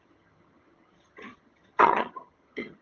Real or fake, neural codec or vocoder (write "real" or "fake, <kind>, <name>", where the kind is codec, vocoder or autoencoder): fake, vocoder, HiFi-GAN